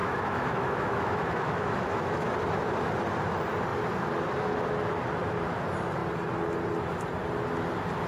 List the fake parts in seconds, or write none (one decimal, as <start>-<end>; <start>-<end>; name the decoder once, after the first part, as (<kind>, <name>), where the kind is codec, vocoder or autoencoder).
0.0-2.3 (autoencoder, DAC-VAE)